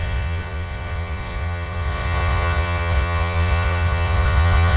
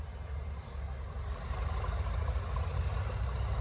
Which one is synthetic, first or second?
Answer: first